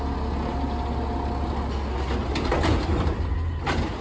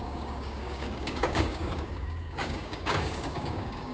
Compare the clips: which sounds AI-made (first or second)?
second